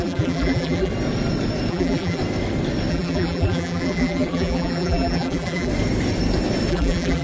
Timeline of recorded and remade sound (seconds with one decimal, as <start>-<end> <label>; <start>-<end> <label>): 0.0-0.9 remade; 0.9-1.7 recorded; 1.7-2.2 remade; 2.2-2.9 recorded; 2.9-5.7 remade; 5.7-6.7 recorded; 6.7-7.2 remade